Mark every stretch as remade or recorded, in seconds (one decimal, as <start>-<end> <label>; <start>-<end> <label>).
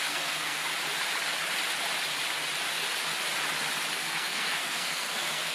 0.0-0.7 remade; 0.7-4.0 recorded; 4.0-5.5 remade